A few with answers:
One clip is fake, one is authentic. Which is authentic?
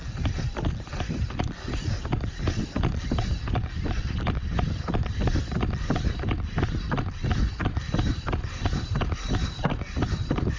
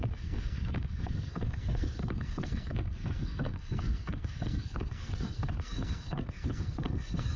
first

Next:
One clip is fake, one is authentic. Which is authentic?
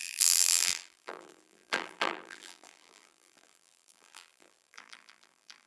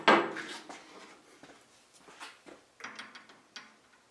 second